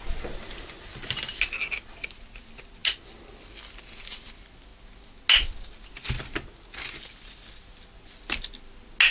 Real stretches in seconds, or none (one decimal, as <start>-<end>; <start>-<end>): 0.0-9.1